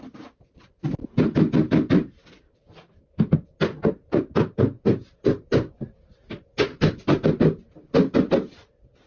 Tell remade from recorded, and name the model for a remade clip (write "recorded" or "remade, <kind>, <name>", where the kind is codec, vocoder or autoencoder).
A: recorded